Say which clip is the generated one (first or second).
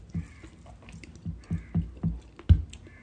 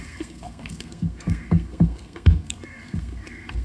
second